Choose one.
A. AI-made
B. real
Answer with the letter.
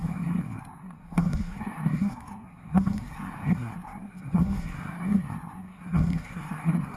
A